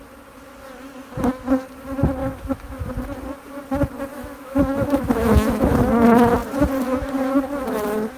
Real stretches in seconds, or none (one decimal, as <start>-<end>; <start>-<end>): 0.0-2.2; 2.9-4.1; 5.9-8.2